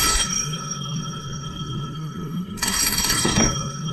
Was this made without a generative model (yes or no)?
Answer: no